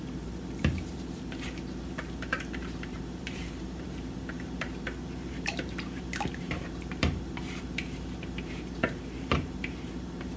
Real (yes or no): no